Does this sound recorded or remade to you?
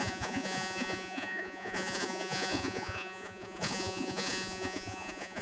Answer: remade